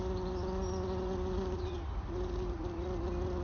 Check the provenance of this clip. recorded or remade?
recorded